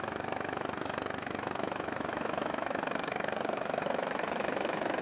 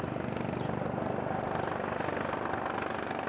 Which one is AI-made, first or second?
first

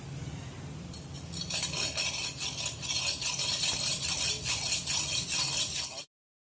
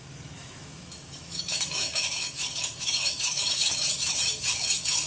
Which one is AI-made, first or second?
second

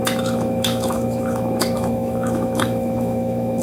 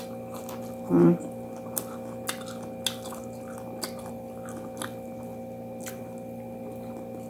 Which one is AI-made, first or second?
first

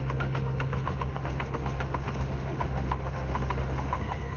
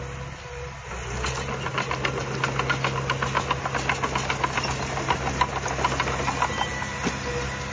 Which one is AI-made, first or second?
first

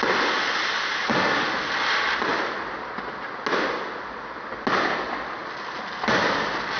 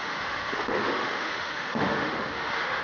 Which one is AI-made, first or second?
second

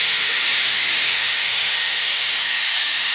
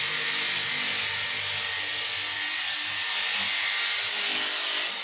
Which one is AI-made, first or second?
first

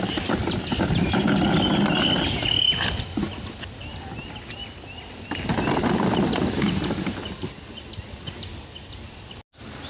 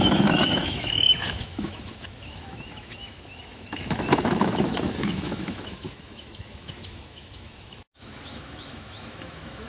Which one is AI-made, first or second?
second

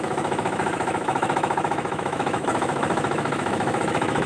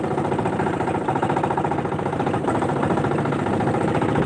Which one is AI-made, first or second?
first